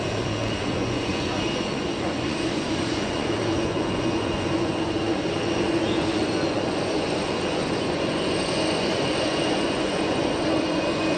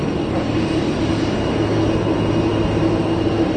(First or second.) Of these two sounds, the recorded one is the second